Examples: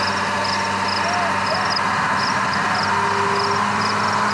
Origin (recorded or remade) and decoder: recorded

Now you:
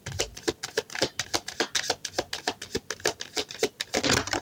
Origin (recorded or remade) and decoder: recorded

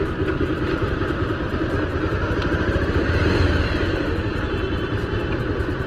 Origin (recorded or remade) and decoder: recorded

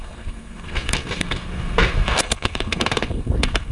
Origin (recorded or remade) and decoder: remade, codec, SNAC